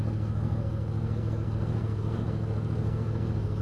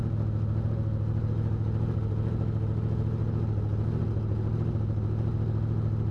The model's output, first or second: first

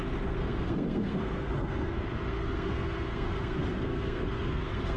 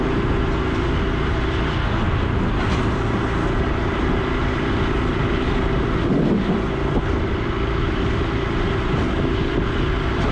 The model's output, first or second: first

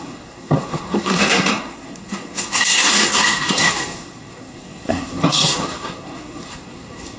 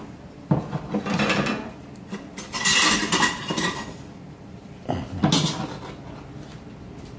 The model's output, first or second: first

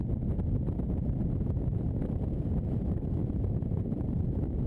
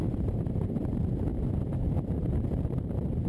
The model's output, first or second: second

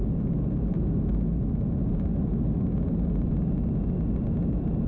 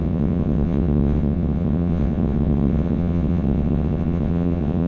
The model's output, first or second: second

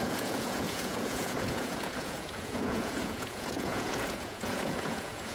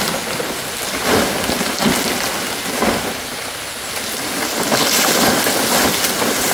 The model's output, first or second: first